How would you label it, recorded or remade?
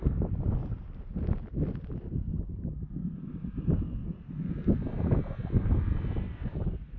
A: recorded